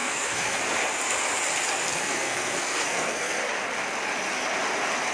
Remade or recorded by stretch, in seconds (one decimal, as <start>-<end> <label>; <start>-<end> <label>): 0.0-0.6 remade; 0.6-1.9 recorded; 1.9-3.4 remade; 3.4-5.1 recorded